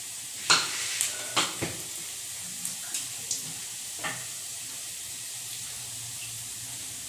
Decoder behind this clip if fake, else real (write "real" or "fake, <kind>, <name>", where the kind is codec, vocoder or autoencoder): real